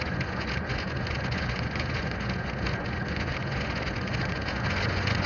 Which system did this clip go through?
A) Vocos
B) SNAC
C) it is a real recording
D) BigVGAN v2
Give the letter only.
A